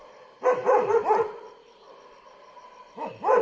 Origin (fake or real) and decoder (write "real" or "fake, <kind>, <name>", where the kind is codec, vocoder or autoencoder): real